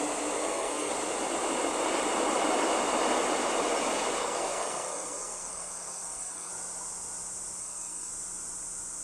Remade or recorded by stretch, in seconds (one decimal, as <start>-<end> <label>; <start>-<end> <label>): 0.0-0.4 recorded; 0.4-0.9 remade; 0.9-4.2 recorded; 4.2-6.5 remade; 6.5-7.6 recorded; 7.6-8.1 remade; 8.1-9.0 recorded